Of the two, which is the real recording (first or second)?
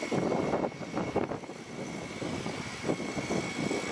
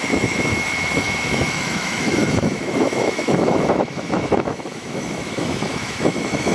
first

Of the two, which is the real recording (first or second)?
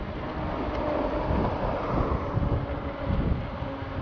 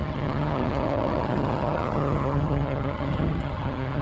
first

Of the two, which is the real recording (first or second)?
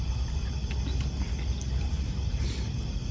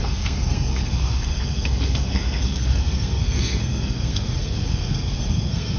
first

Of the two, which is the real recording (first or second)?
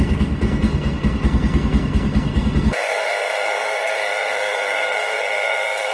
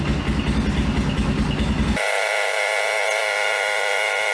second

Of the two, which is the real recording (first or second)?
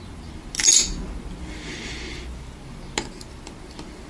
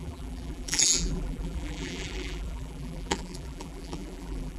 first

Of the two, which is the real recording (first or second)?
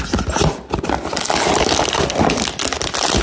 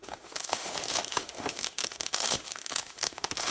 first